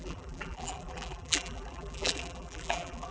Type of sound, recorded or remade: remade